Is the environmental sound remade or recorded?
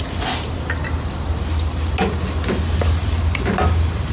recorded